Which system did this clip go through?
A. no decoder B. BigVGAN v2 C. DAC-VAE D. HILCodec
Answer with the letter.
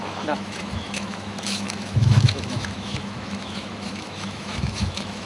C